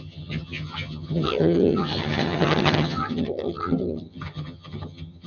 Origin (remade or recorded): remade